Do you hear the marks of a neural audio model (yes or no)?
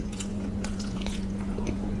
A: yes